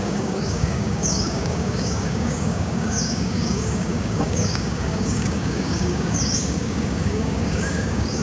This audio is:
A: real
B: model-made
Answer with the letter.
B